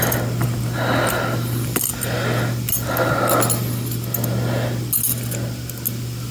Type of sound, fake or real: real